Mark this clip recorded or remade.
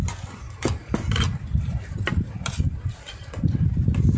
recorded